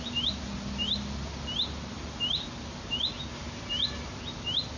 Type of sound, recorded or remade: recorded